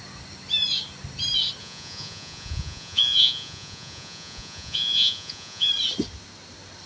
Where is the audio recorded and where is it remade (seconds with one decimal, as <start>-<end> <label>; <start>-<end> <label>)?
0.0-1.6 recorded; 1.6-5.7 remade; 5.7-6.9 recorded